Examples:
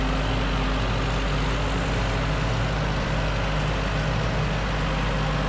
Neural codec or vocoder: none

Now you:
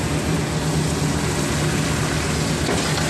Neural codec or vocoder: none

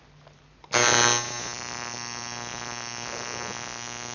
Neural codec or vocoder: none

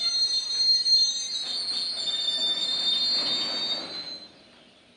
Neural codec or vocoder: none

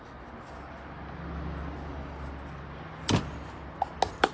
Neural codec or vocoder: none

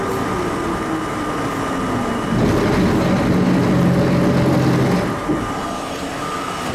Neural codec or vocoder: none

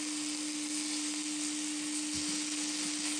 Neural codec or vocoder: none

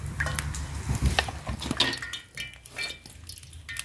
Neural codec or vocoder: none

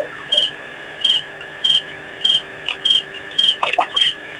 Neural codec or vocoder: autoencoder, DAC-VAE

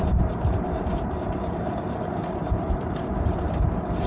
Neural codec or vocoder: vocoder, BigVGAN v2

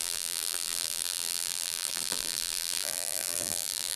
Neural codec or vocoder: vocoder, BigVGAN v2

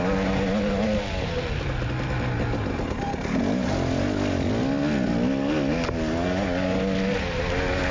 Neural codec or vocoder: none